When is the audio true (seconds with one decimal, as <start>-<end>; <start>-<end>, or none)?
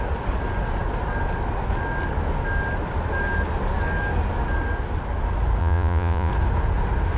0.0-5.6; 6.3-7.2